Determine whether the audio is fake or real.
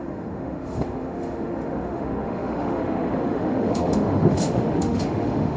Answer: fake